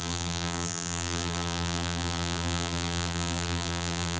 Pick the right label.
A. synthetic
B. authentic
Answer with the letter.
A